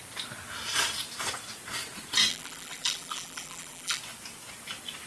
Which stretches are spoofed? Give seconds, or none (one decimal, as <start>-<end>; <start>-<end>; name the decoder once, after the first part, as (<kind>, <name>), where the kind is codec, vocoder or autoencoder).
2.3-4.0 (vocoder, BigVGAN v2)